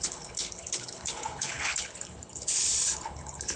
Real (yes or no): no